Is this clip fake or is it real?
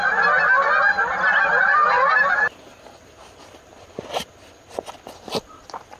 real